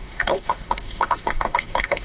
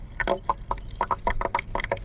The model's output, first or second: first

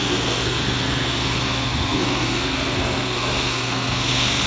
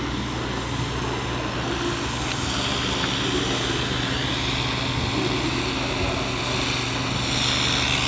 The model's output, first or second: first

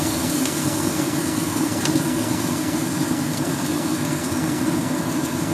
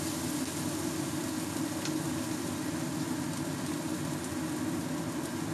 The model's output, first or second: first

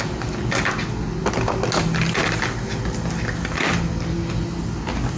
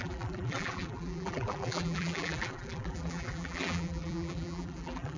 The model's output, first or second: second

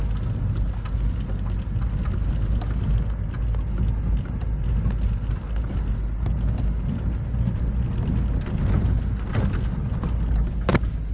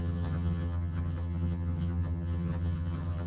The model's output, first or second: second